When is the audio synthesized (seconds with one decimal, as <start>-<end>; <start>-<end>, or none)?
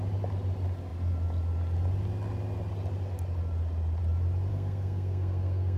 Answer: 4.5-5.8